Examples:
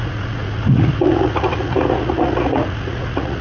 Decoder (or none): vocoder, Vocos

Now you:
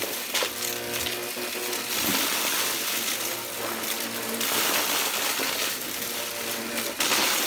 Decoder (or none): none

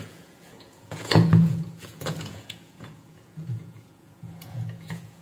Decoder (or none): vocoder, Vocos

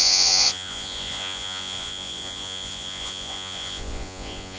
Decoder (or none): vocoder, Vocos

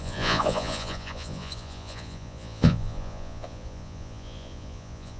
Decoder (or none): vocoder, Vocos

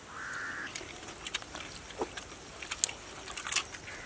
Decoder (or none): none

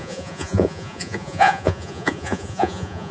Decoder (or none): vocoder, Vocos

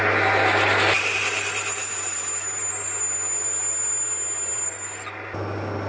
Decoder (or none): none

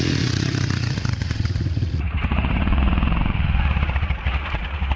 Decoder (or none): vocoder, Vocos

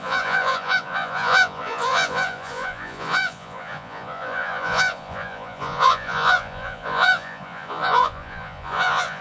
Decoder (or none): vocoder, Vocos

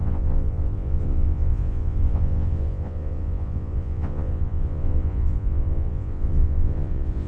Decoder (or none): vocoder, Vocos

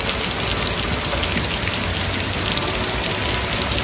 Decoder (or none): none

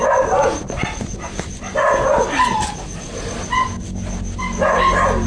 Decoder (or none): none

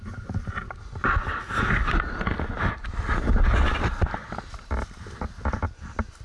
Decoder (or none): none